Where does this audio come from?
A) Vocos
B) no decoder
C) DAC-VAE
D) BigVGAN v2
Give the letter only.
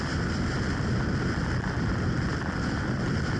B